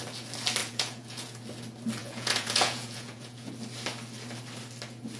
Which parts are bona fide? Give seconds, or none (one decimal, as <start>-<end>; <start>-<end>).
0.0-0.6; 1.4-2.0; 3.5-5.2